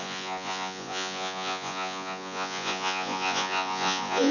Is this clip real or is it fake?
fake